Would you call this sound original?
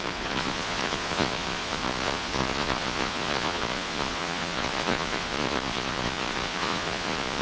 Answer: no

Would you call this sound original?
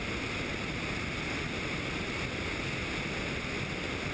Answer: yes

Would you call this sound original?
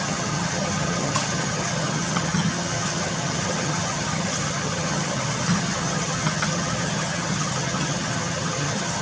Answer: no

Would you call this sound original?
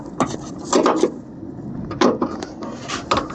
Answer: yes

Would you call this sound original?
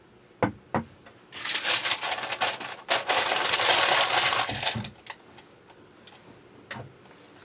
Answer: yes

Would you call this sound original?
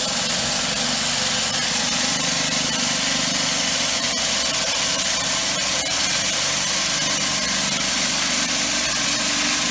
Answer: yes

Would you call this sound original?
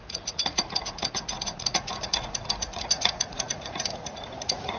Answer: no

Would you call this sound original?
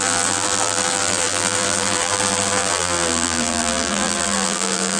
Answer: no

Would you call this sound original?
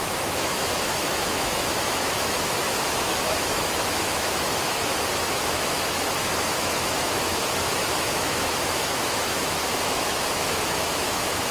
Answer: no